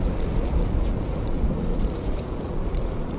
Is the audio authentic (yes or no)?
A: no